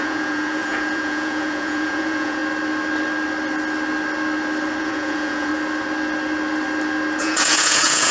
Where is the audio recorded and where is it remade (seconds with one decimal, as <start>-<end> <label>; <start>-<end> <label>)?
0.0-2.4 remade; 2.4-4.8 recorded; 4.8-5.5 remade; 5.5-7.2 recorded; 7.2-8.1 remade